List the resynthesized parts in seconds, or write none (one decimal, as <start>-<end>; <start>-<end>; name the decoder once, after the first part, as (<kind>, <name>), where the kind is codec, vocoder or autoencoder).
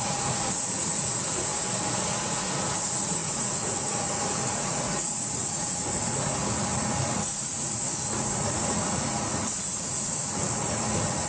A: 0.0-1.5 (vocoder, Vocos); 2.0-11.3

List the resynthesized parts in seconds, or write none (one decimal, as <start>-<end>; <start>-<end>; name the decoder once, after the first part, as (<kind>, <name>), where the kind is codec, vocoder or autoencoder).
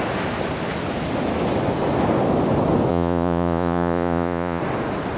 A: 2.9-4.6 (vocoder, Vocos)